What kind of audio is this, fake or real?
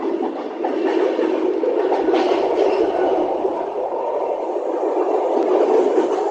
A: real